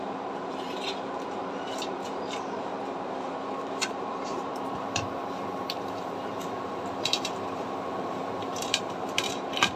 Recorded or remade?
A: remade